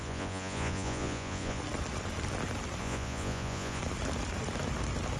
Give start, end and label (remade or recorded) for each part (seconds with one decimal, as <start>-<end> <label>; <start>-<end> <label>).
0.0-1.6 remade; 1.6-2.8 recorded; 2.8-3.8 remade; 3.8-5.2 recorded